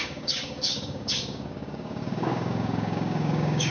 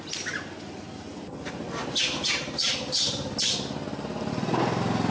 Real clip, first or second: second